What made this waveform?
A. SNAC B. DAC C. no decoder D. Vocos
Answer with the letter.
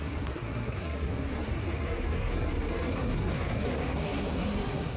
A